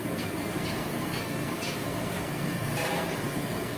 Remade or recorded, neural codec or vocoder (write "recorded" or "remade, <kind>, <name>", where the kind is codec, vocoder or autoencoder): remade, codec, SNAC